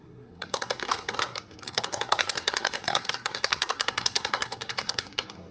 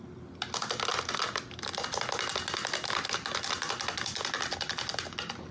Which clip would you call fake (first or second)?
first